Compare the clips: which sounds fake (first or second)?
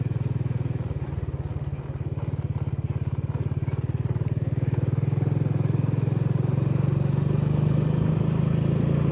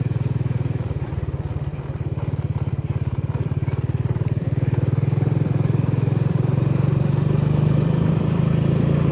second